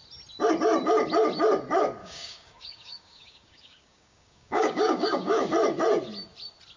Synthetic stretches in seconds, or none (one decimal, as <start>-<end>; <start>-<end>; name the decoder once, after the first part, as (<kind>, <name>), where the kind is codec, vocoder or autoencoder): 2.0-5.5 (codec, DAC)